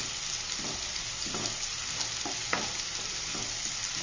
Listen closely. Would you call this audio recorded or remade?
recorded